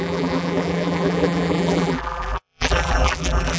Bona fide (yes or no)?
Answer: no